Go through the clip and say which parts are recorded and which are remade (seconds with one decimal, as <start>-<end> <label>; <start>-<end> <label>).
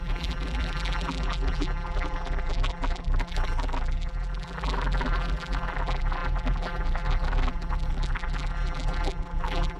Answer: 0.0-9.8 remade